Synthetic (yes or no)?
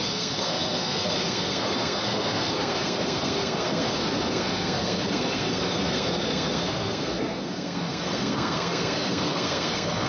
yes